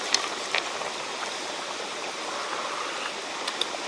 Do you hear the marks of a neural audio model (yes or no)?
no